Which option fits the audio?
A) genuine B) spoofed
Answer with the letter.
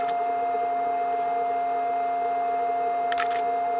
A